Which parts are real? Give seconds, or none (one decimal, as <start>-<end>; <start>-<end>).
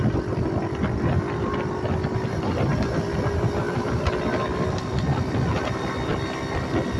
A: 0.0-7.0